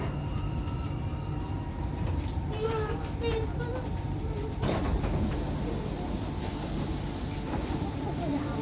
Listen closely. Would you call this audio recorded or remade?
recorded